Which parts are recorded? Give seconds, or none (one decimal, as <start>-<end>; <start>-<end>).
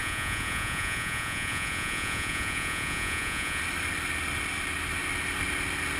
3.6-6.0